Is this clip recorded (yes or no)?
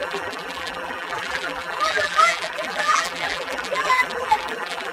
no